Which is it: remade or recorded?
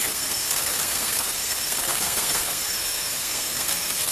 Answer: remade